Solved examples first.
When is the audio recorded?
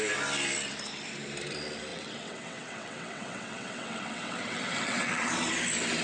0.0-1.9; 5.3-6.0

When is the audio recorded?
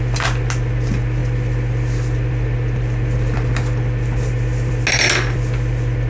0.0-6.1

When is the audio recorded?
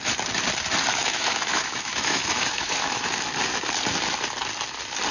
0.0-0.9; 3.1-5.1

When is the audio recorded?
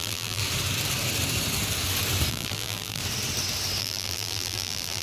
0.4-2.3; 3.0-3.8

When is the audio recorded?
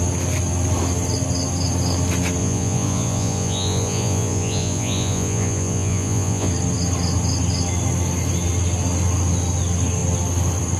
0.0-2.4; 6.5-10.8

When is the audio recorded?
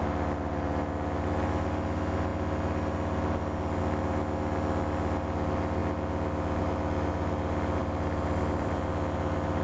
0.0-7.8; 8.8-9.6